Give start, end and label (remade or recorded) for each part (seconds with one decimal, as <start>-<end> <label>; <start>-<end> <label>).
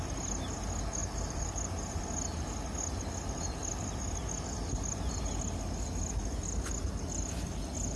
0.0-1.0 recorded; 1.0-2.0 remade; 2.0-8.0 recorded